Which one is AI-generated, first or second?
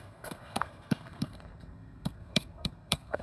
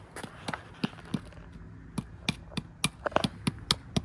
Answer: first